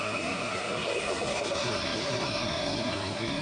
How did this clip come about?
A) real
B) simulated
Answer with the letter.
B